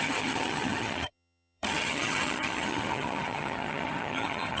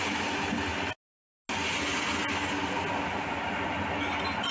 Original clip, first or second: second